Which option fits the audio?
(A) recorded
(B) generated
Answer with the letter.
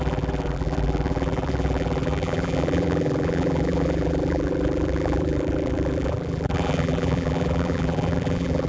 B